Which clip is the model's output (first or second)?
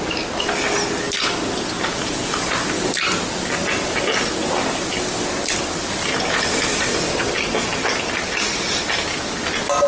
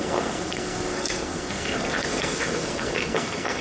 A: second